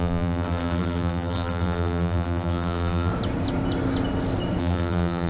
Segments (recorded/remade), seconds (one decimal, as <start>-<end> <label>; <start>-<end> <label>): 0.0-3.1 remade; 3.1-4.6 recorded; 4.6-5.3 remade